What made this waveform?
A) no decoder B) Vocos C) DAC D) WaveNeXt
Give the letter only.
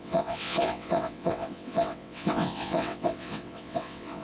D